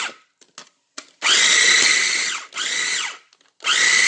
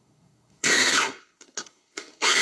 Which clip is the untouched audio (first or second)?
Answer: first